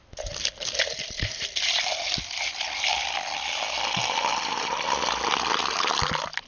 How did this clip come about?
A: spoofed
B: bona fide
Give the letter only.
B